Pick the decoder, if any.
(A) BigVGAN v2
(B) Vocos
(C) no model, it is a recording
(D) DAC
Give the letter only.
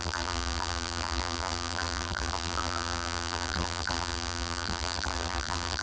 A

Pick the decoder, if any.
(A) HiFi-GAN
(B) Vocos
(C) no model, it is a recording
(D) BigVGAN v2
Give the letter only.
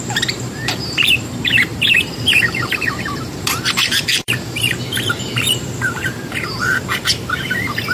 D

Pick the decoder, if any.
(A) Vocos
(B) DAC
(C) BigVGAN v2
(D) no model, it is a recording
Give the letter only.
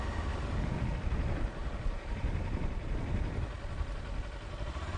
D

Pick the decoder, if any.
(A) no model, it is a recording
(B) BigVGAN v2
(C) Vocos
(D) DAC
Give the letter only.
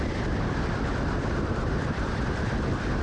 A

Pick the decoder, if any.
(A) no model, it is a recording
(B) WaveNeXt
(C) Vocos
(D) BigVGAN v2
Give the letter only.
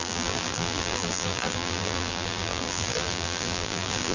D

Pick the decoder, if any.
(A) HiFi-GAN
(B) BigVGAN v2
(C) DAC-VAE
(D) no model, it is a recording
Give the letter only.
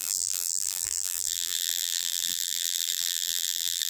B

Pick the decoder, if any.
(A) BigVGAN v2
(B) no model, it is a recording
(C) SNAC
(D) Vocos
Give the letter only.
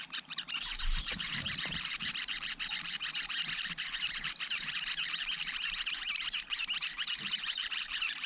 A